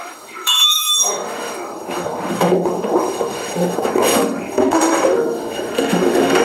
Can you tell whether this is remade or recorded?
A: remade